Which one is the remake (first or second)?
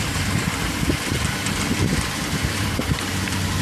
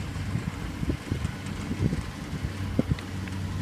first